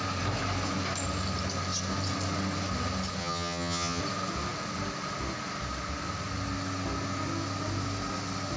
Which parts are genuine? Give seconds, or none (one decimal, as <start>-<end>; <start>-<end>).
0.0-3.2; 4.0-8.6